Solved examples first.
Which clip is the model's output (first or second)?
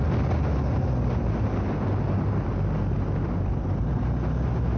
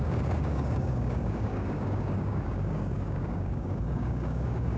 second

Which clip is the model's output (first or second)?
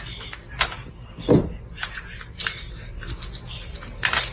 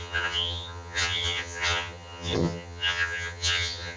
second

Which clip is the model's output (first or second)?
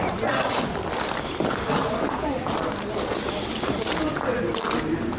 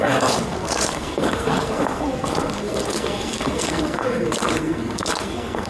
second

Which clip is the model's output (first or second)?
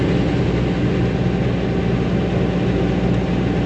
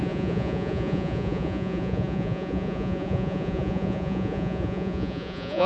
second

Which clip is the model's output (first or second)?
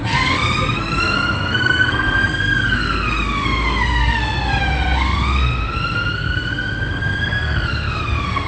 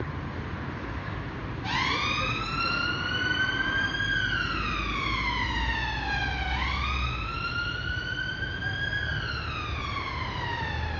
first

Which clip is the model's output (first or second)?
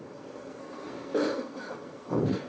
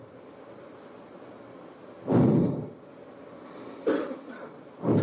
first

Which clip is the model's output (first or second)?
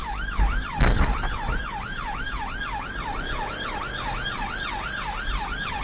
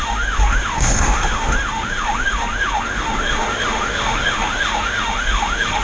second